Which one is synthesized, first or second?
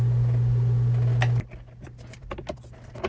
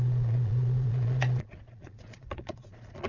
second